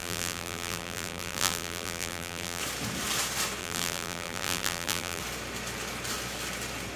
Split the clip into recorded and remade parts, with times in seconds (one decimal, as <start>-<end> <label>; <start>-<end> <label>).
0.0-2.6 remade; 2.6-3.6 recorded; 3.6-5.2 remade; 5.2-7.0 recorded